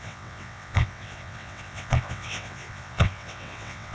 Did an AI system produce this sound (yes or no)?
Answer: yes